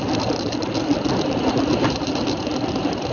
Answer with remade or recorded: remade